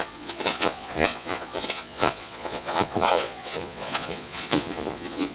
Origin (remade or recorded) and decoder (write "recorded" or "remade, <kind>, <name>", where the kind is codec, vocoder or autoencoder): remade, vocoder, Vocos